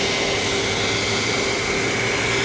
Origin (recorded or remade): recorded